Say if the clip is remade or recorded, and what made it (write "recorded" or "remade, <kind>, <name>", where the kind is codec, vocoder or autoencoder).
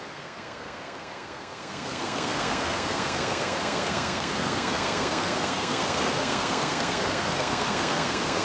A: remade, codec, SNAC